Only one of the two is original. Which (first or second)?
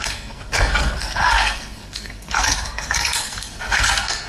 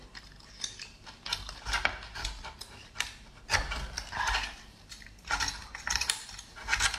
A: second